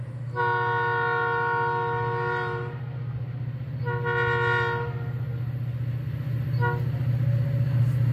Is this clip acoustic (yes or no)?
yes